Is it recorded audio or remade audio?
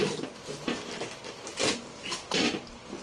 recorded